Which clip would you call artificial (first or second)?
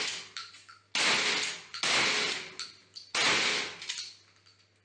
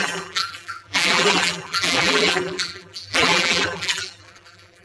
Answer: second